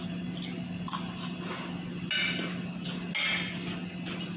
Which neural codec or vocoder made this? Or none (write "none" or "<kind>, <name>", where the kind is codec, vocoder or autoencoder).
none